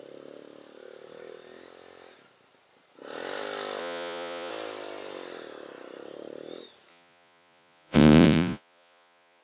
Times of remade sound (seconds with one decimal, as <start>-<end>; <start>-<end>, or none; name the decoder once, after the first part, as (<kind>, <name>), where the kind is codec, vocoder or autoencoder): 3.8-4.5 (vocoder, Vocos); 6.9-9.4